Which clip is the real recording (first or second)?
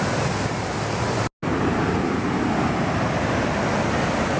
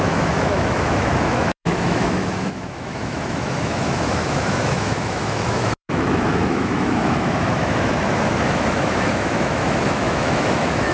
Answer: first